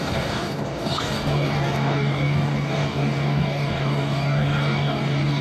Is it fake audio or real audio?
fake